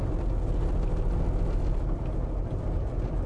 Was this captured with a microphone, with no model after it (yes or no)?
yes